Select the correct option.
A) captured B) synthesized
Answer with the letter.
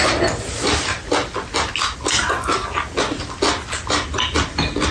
A